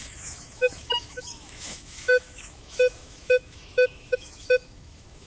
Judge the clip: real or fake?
fake